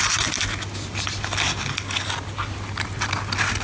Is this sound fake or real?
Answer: real